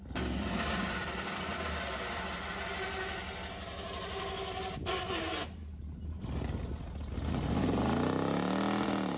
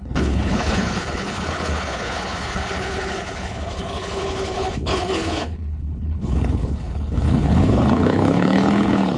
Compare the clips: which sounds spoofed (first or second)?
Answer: second